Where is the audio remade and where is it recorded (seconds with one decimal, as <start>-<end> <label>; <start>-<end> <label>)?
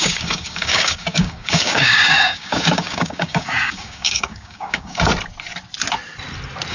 0.0-5.1 remade; 5.1-6.7 recorded